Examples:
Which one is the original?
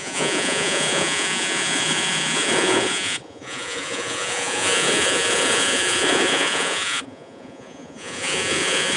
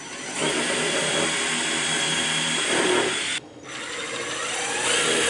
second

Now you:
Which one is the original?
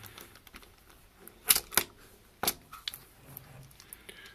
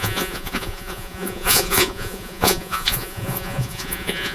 first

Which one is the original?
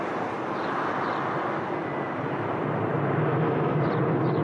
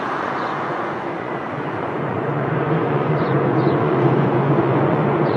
first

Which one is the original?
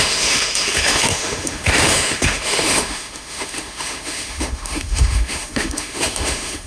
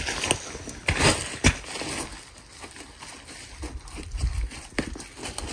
second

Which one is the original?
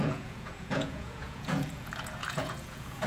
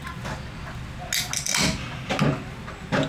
second